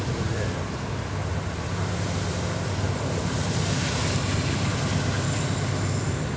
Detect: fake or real real